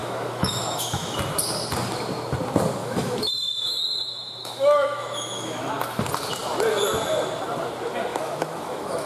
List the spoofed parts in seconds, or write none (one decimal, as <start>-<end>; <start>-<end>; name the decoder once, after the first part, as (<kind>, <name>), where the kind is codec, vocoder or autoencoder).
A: 0.0-1.2 (autoencoder, DAC-VAE); 2.8-5.7; 8.1-9.1